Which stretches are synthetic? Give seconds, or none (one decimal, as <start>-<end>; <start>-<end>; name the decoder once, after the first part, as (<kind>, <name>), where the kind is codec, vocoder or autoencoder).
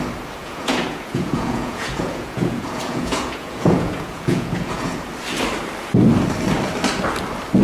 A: 0.4-5.0 (vocoder, Vocos)